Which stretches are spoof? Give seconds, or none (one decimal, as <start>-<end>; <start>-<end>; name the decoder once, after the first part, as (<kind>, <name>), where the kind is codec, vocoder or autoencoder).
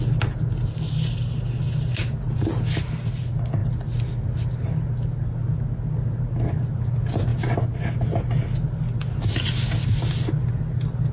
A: none